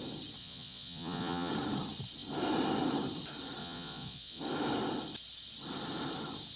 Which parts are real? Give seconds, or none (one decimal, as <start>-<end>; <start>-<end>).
0.0-0.4; 1.5-3.6; 4.4-6.6